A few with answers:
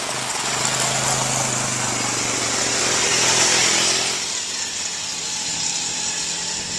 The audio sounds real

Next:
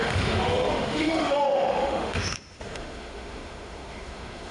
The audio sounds fake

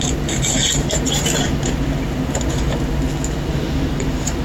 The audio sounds real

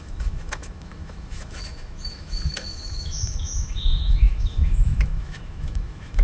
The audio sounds fake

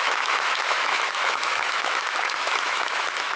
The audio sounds fake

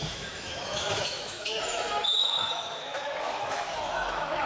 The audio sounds fake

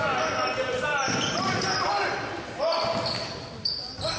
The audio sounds real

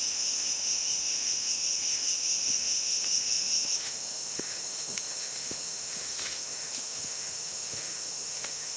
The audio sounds fake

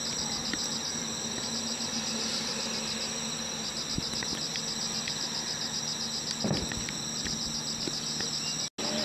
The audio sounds real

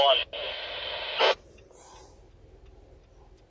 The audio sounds real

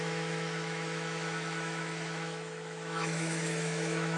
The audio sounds fake